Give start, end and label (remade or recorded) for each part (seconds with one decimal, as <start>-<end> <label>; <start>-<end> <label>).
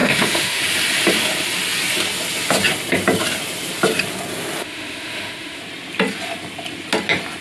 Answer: 0.0-0.6 remade; 0.6-4.6 recorded; 4.6-5.6 remade; 5.6-7.4 recorded